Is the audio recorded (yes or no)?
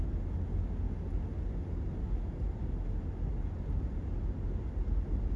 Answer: yes